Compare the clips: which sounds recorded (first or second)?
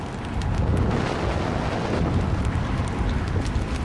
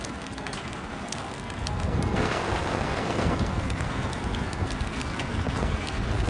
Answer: first